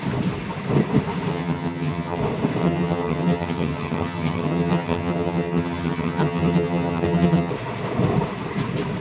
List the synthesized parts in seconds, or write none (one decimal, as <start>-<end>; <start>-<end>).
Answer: 1.3-2.2; 2.6-7.5